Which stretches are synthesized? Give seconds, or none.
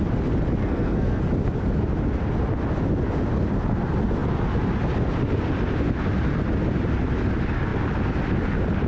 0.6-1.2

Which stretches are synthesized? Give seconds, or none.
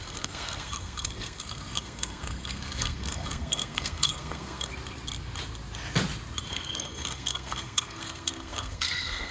0.0-4.7; 6.5-9.3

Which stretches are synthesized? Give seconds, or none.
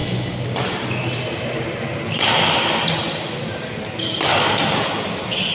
none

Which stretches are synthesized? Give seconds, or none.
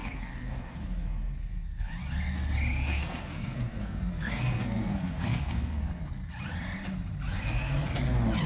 0.0-1.9; 2.9-6.0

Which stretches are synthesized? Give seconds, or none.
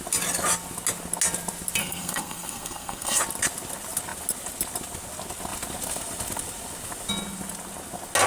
1.8-3.2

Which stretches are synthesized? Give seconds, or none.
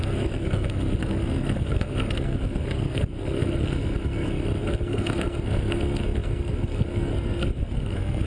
0.0-8.3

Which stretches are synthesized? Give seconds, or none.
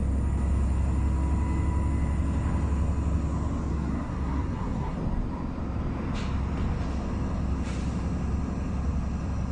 3.7-5.0